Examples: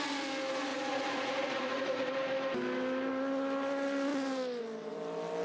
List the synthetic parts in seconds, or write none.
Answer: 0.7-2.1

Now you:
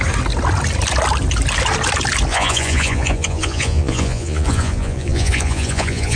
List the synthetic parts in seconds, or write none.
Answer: 2.3-6.2

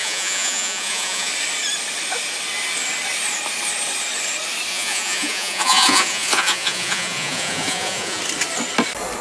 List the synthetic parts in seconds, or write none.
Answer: 0.0-1.3; 4.7-8.2

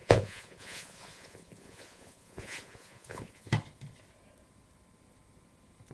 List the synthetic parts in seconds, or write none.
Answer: 0.0-3.5

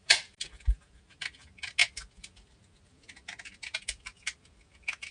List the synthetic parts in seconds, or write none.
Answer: none

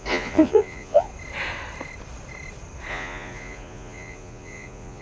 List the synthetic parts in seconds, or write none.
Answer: 0.0-1.1; 2.9-5.0

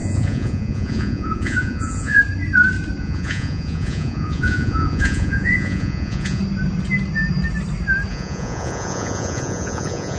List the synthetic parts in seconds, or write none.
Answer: 0.0-2.2; 3.0-6.4; 8.1-10.2